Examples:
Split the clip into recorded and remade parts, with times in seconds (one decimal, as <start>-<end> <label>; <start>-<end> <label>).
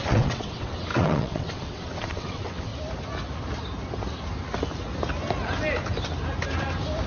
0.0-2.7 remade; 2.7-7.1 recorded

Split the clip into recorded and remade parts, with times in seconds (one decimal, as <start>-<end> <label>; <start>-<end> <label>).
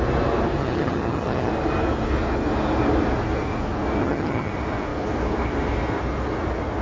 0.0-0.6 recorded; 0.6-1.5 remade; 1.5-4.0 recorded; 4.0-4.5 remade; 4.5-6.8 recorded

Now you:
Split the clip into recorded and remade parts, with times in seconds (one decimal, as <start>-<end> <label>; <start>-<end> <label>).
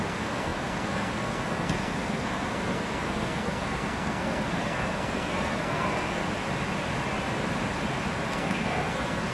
0.0-6.2 remade; 6.2-8.3 recorded; 8.3-9.3 remade